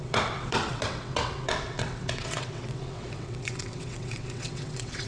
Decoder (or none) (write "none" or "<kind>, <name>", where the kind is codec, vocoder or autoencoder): vocoder, WaveNeXt